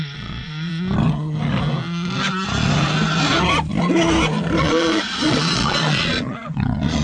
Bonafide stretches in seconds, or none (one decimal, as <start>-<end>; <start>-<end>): 0.7-4.6